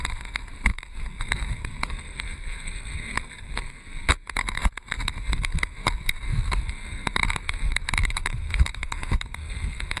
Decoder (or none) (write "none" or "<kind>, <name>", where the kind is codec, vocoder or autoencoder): codec, SNAC